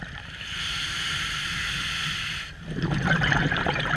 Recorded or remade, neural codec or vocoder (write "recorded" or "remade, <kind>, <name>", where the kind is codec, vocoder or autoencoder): recorded